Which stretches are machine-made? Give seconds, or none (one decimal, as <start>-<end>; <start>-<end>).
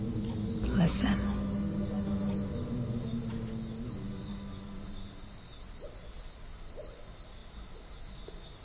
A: none